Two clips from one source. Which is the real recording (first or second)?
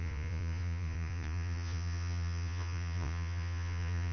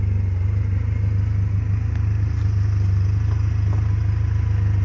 second